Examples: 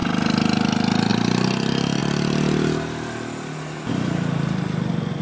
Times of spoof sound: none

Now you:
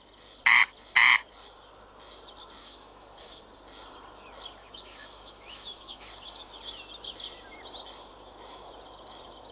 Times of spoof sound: 2.6-3.4 (autoencoder, DAC-VAE); 4.6-6.1

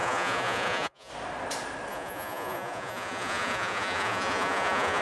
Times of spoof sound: 0.0-1.1 (vocoder, Vocos); 1.9-5.0

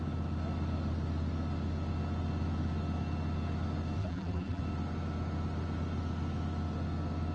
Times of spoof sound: 4.0-4.6 (vocoder, BigVGAN v2)

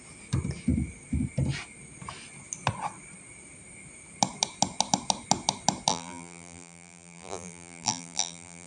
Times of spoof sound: 5.9-8.7 (vocoder, BigVGAN v2)

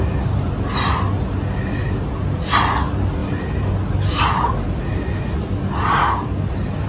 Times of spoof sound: none

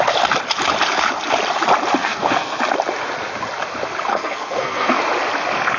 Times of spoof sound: 2.0-2.6 (codec, SNAC); 4.1-5.0